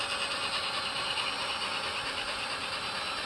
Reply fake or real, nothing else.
real